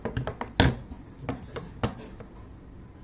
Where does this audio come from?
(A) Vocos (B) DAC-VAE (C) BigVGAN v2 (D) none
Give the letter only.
D